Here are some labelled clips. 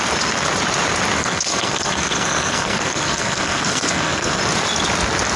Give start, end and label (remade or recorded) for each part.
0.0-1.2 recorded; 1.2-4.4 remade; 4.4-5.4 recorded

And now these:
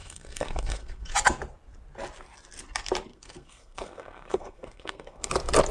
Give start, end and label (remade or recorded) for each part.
0.0-1.1 remade; 1.1-3.1 recorded; 3.1-5.3 remade; 5.3-5.7 recorded

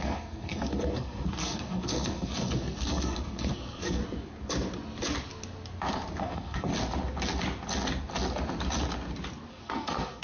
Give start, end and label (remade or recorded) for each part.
0.0-4.0 remade; 4.0-6.2 recorded; 6.2-6.7 remade; 6.7-9.5 recorded; 9.5-10.2 remade

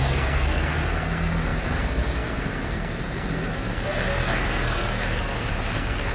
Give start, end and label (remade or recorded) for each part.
0.0-6.1 remade

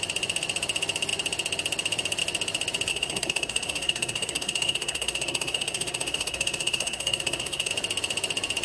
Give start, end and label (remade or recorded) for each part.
0.0-2.9 recorded; 2.9-7.7 remade; 7.7-8.6 recorded

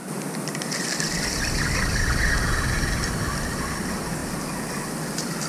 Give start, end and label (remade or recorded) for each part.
0.0-5.5 recorded

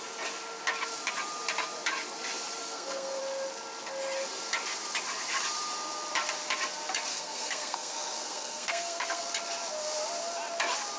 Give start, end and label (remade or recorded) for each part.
0.0-2.6 recorded; 2.6-3.2 remade; 3.2-7.1 recorded; 7.1-9.2 remade; 9.2-11.0 recorded

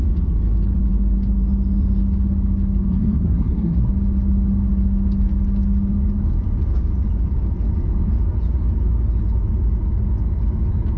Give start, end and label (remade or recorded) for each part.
0.0-2.9 recorded; 2.9-3.9 remade; 3.9-11.0 recorded